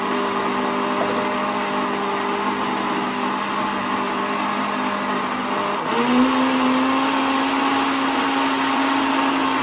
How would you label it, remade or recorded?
recorded